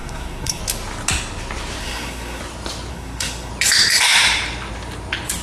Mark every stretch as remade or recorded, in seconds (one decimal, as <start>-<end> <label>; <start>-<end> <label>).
0.0-0.6 remade; 0.6-1.8 recorded; 1.8-2.4 remade; 2.4-2.9 recorded; 2.9-3.5 remade; 3.5-5.4 recorded